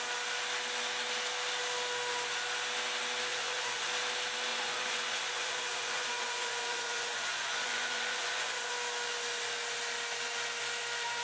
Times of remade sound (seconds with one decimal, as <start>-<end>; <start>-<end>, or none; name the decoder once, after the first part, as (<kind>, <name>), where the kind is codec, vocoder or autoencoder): 3.3-3.9 (vocoder, Vocos); 4.5-8.7